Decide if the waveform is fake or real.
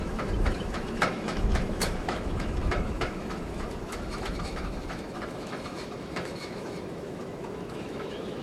fake